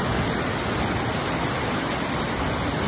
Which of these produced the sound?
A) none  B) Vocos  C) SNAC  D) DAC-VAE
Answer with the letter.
A